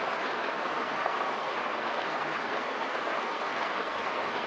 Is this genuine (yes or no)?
no